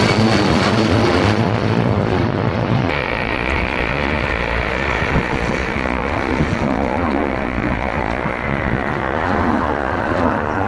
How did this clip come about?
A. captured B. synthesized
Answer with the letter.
B